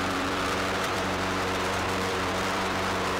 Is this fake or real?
fake